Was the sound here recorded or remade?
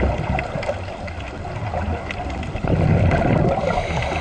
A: recorded